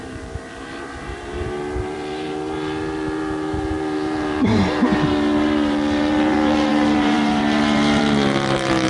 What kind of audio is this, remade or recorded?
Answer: remade